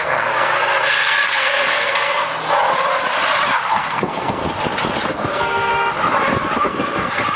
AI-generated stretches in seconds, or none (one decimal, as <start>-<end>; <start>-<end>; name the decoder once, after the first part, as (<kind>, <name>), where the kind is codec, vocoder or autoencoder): 0.0-2.3 (codec, SNAC); 3.7-4.4; 5.1-5.7; 6.6-7.4

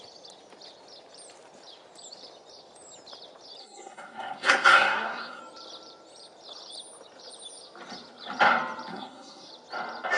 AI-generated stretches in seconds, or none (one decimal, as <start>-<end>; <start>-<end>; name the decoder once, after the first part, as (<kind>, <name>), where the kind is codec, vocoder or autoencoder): 3.6-5.4 (codec, SNAC); 8.9-9.5

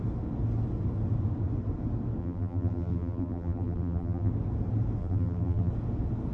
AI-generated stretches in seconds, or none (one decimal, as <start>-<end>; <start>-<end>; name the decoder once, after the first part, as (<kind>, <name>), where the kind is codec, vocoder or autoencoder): 2.2-4.3 (vocoder, BigVGAN v2); 5.0-5.7

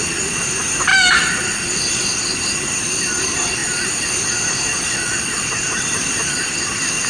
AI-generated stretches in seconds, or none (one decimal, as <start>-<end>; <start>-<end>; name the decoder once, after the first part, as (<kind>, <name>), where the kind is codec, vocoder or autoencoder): none

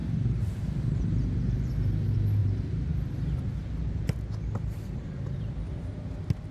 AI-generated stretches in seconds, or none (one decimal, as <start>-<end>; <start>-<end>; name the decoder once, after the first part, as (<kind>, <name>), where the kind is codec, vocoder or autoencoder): 0.0-1.6 (vocoder, BigVGAN v2); 2.4-2.9

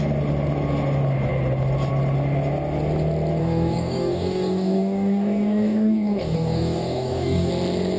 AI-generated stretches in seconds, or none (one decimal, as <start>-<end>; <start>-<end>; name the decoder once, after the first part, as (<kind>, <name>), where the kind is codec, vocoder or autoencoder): 3.4-7.5 (codec, DAC)

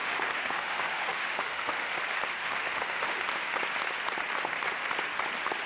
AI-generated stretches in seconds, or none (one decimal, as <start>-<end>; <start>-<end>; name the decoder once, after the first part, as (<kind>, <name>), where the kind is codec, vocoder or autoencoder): 0.0-2.0 (autoencoder, DAC-VAE); 2.4-3.2

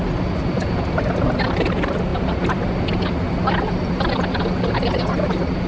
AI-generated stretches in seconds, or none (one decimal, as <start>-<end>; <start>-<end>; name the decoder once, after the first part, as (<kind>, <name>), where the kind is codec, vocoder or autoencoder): none